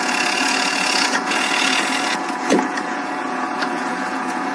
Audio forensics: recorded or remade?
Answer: remade